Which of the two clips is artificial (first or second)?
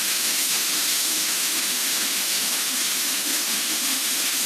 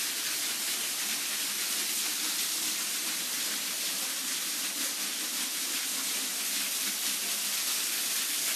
first